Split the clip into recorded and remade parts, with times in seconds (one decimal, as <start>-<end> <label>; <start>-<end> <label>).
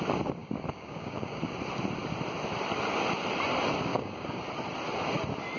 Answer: 0.0-0.4 recorded; 0.4-1.4 remade; 1.4-3.9 recorded; 3.9-4.4 remade; 4.4-5.6 recorded